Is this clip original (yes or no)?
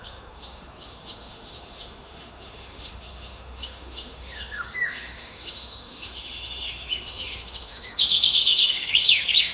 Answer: no